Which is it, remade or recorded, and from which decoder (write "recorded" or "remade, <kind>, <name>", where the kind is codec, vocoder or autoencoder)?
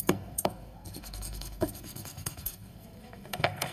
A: remade, codec, SNAC